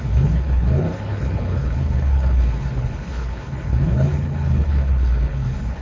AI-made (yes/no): yes